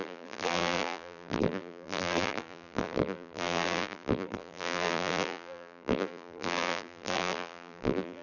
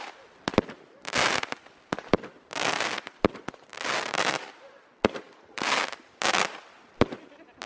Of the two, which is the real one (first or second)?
second